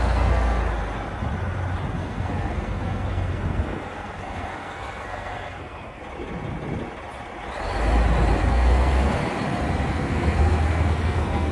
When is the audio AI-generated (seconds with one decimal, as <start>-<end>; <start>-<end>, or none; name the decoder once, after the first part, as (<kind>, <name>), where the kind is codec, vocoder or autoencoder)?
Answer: 0.0-0.6 (codec, SNAC); 1.9-6.0; 8.4-9.2; 9.9-11.5